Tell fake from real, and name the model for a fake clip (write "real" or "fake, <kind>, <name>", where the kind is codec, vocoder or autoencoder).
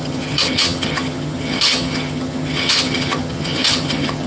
fake, vocoder, HiFi-GAN